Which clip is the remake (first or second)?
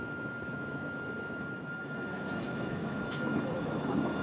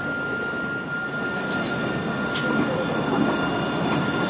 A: first